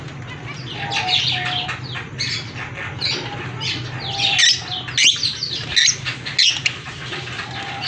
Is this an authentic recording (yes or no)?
yes